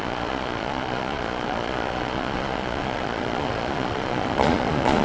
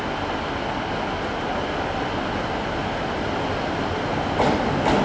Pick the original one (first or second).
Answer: second